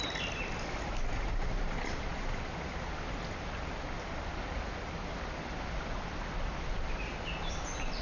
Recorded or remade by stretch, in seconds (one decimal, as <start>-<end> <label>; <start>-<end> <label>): 0.0-8.0 recorded